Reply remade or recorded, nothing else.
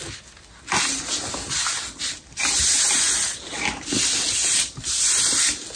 recorded